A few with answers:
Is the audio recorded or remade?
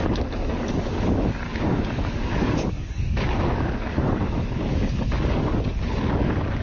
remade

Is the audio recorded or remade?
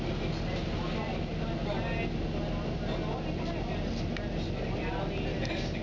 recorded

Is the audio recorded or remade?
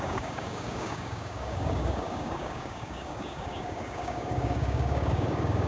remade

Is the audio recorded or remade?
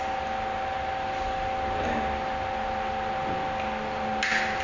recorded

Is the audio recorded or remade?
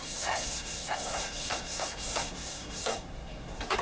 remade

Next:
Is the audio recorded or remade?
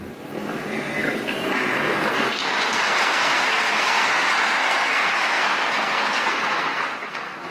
remade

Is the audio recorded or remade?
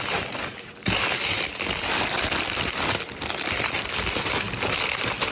recorded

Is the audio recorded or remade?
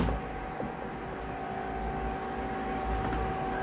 recorded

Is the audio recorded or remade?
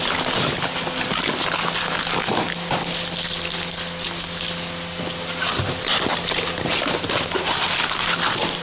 recorded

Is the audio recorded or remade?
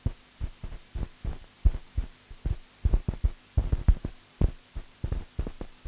recorded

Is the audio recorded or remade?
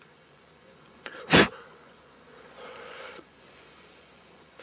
remade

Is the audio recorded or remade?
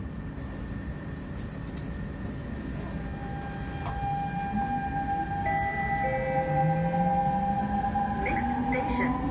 recorded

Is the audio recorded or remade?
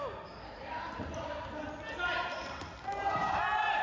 recorded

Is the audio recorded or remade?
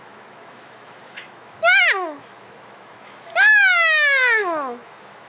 remade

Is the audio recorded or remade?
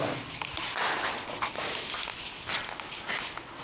recorded